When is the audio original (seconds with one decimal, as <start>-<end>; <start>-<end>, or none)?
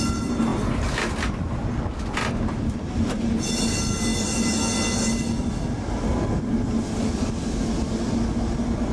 0.0-8.9